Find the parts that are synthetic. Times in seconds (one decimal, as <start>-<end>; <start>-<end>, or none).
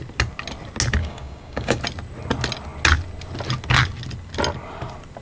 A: 1.0-1.8